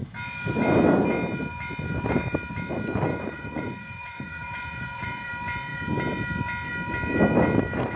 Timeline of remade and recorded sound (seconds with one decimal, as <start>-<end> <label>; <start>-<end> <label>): 0.0-3.1 recorded; 3.1-5.3 remade; 5.3-8.0 recorded